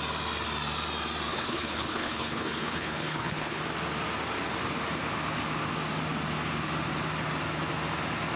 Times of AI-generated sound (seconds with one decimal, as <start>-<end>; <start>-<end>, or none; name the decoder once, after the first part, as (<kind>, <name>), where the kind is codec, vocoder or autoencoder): 1.3-3.6 (codec, HILCodec)

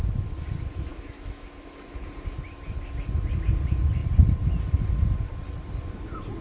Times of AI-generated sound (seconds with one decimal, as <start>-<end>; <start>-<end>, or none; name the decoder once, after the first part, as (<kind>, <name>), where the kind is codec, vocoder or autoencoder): 0.9-2.1 (autoencoder, DAC-VAE)

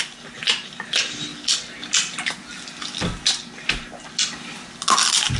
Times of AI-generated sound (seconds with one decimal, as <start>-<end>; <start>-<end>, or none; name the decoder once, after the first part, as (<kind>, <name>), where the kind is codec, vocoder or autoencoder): none

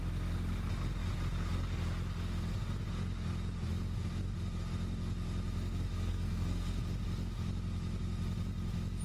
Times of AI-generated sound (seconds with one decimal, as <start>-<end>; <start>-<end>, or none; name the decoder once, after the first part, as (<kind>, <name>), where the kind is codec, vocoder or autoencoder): 6.1-6.8 (codec, SNAC)

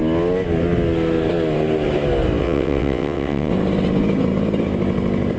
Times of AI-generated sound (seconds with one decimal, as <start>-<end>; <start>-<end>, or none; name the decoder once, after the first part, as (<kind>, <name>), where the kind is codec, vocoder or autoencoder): 2.4-3.5 (vocoder, WaveNeXt)